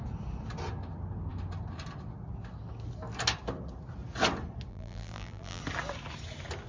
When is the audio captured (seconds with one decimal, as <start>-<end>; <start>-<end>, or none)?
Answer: 0.0-4.7; 5.6-6.7